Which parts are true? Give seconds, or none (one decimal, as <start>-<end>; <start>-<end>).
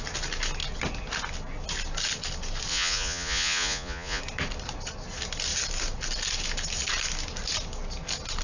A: 0.0-2.7; 4.2-8.4